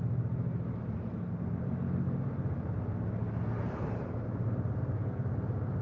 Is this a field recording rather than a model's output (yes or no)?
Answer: yes